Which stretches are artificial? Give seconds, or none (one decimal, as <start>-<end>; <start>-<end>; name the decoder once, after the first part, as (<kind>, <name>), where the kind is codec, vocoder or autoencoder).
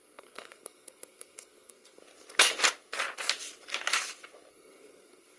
0.0-2.0 (codec, SNAC); 4.5-5.4